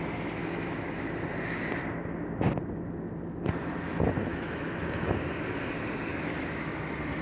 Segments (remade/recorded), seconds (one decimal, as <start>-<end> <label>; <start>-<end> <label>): 0.0-0.4 recorded; 0.4-1.1 remade; 1.1-4.3 recorded; 4.3-5.1 remade; 5.1-6.1 recorded; 6.1-6.8 remade; 6.8-7.2 recorded